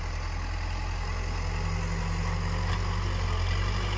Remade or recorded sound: recorded